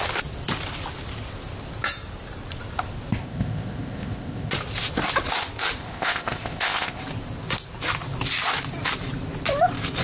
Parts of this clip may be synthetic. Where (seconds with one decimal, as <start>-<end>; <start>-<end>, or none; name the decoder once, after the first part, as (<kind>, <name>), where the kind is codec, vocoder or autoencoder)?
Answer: 3.2-4.5 (codec, ZipCodec); 5.8-7.0